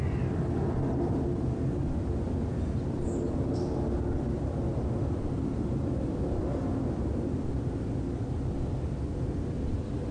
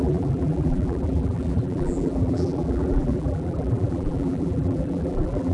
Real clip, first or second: first